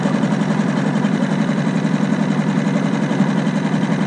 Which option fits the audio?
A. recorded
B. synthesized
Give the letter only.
A